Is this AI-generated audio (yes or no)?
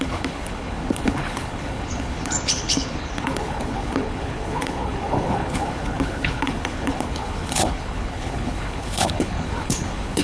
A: yes